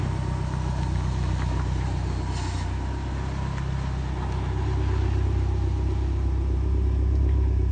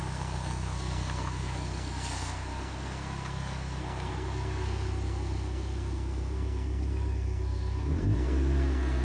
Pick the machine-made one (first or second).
second